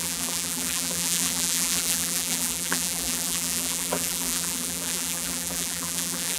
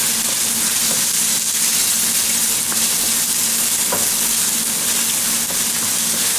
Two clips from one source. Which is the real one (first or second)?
second